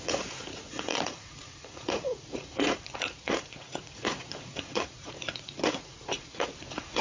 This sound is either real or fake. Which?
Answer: fake